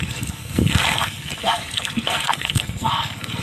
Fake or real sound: fake